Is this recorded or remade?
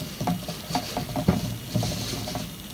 recorded